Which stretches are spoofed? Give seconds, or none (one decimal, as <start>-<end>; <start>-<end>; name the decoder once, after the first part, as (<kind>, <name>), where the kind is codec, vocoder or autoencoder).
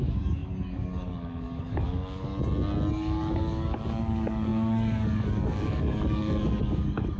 0.0-2.3 (codec, DAC); 2.9-7.2